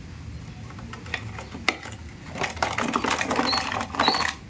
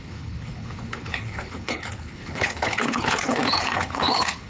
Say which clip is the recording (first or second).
first